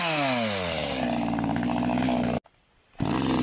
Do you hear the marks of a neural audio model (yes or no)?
no